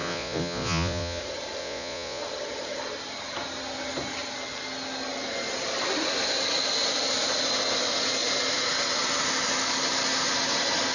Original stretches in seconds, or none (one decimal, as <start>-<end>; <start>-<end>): 1.2-1.6; 2.2-10.9